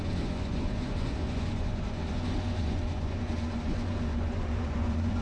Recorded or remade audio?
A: remade